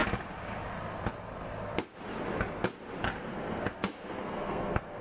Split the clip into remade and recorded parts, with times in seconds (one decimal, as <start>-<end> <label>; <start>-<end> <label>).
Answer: 0.0-3.3 recorded; 3.3-5.0 remade